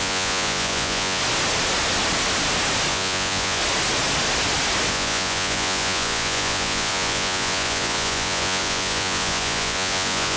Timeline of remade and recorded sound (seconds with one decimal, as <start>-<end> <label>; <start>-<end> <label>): 0.0-1.2 remade; 1.2-2.9 recorded; 2.9-3.6 remade; 3.6-4.9 recorded; 4.9-10.4 remade